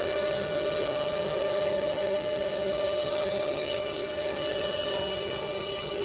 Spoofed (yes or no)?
yes